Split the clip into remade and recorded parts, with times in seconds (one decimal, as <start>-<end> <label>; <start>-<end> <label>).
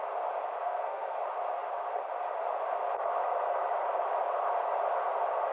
0.0-0.6 recorded; 0.6-1.2 remade; 1.2-5.5 recorded